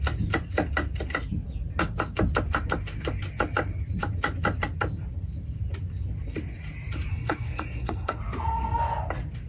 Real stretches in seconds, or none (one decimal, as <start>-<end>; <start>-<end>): 0.0-7.1; 8.2-9.5